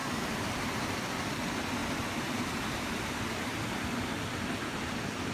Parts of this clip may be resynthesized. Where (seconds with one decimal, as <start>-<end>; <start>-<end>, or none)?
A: 0.0-1.1; 1.8-3.8